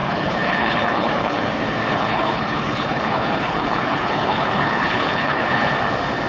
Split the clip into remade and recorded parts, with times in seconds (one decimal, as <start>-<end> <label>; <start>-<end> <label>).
0.0-1.5 remade; 1.5-1.9 recorded; 1.9-5.7 remade; 5.7-6.3 recorded